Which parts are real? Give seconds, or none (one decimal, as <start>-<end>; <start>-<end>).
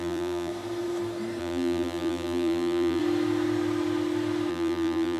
0.5-1.4; 3.0-4.5